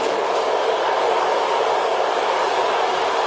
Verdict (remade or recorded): remade